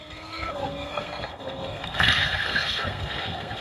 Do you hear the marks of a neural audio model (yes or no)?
yes